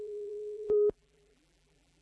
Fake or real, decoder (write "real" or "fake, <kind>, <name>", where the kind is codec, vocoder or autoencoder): fake, vocoder, BigVGAN v2